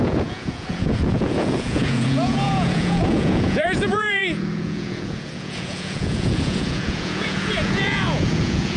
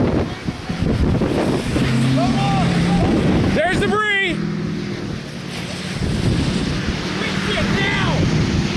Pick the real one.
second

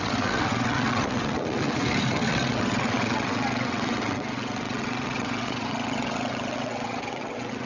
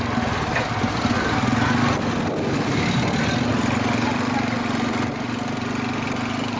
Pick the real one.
second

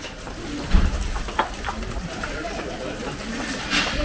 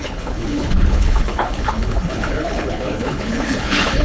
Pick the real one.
first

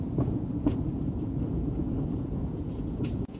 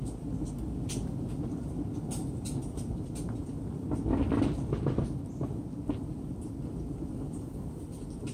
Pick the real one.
second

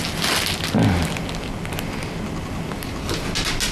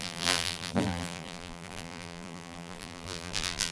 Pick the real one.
first